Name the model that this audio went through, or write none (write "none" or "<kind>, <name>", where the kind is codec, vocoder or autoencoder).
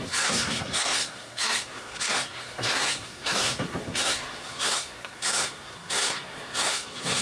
codec, SNAC